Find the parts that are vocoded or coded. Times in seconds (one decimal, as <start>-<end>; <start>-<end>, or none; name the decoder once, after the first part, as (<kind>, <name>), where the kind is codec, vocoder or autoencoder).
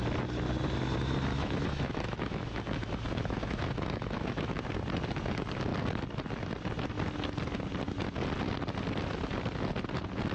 1.3-2.6 (autoencoder, DAC-VAE); 3.2-4.6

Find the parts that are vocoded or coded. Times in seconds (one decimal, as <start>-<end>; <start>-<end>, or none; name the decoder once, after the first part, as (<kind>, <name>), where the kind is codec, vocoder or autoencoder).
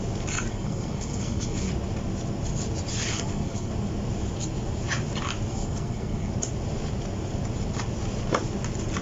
0.5-1.7 (codec, SNAC); 3.1-3.7; 5.5-6.3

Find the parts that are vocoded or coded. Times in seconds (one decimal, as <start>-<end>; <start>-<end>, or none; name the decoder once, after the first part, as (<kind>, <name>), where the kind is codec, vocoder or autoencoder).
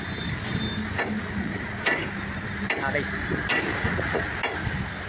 1.2-1.8 (vocoder, Vocos); 3.7-4.2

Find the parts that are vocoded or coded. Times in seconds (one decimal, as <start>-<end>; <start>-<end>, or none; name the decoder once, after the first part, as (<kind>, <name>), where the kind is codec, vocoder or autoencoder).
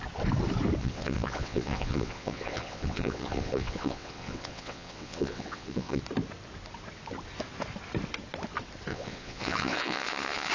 0.8-6.0 (vocoder, WaveNeXt); 8.9-10.5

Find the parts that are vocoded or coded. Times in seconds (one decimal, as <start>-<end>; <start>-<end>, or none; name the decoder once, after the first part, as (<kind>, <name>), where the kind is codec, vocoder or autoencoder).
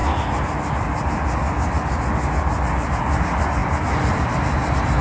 none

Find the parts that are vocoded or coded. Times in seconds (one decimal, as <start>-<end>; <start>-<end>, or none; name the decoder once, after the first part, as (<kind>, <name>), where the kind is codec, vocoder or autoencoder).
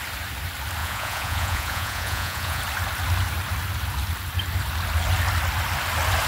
0.8-2.6 (vocoder, Vocos)